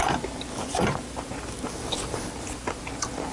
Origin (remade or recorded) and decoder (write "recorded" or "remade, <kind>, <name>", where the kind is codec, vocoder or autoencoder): recorded